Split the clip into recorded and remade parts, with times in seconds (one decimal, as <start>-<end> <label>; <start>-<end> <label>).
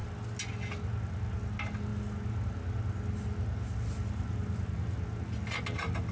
0.0-6.1 recorded